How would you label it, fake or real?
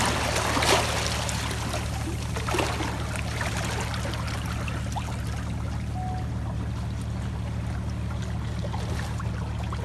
real